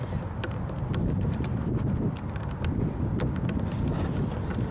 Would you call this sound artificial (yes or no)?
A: no